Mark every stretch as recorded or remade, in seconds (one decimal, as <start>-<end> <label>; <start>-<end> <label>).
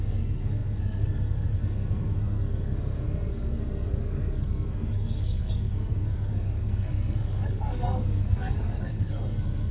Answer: 0.0-9.7 remade